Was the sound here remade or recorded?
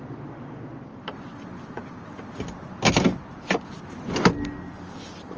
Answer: recorded